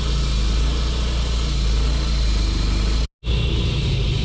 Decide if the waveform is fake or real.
real